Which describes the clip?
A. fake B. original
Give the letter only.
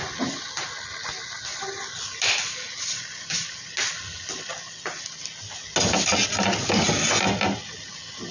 B